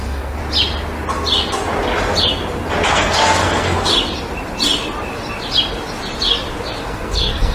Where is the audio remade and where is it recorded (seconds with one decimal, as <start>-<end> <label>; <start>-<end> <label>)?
0.0-0.4 remade; 0.4-2.9 recorded; 2.9-3.9 remade; 3.9-6.8 recorded; 6.8-7.5 remade

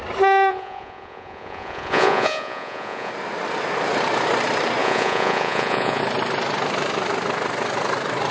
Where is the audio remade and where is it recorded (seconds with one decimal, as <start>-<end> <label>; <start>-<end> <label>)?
0.0-0.5 recorded; 0.5-3.1 remade; 3.1-4.8 recorded; 4.8-6.0 remade; 6.0-8.3 recorded

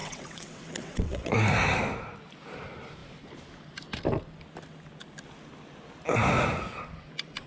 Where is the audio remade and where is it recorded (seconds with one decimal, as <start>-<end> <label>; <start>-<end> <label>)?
0.0-1.3 remade; 1.3-7.5 recorded